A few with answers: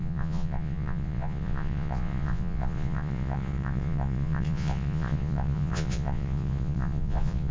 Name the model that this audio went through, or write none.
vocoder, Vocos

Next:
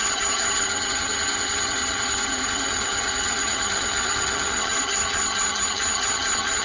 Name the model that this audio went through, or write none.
vocoder, HiFi-GAN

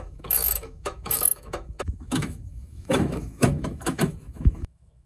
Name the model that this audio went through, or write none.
autoencoder, DAC-VAE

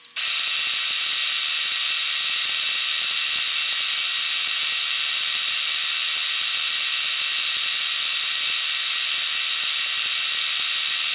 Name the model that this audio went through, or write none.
none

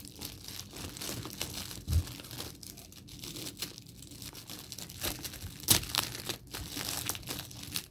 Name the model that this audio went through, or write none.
none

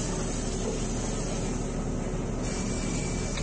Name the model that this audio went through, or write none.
none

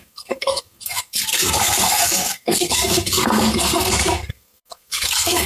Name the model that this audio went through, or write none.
codec, SNAC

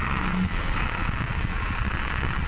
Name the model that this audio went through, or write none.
vocoder, WaveNeXt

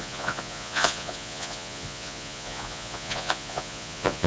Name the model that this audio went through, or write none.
vocoder, Vocos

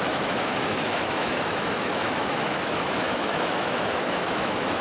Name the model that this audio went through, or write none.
autoencoder, DAC-VAE